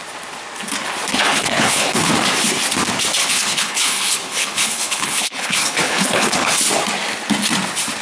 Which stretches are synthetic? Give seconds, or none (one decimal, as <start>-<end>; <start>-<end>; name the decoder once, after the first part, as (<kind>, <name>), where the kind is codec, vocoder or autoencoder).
1.1-2.1 (codec, HILCodec); 3.2-6.6